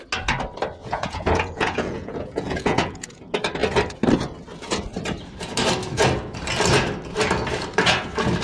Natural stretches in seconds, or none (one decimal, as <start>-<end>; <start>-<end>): 0.0-0.8; 3.2-8.4